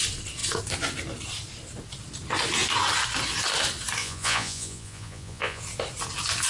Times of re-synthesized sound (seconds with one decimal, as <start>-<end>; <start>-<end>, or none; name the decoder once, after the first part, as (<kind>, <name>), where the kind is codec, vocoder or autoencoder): 4.0-5.6 (vocoder, Vocos)